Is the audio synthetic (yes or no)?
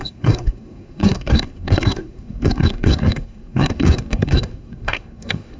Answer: yes